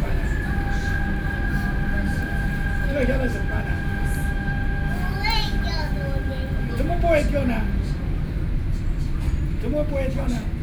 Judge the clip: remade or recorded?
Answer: recorded